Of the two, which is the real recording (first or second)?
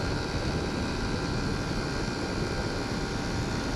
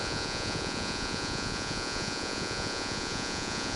first